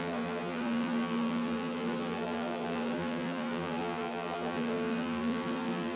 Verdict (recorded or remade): remade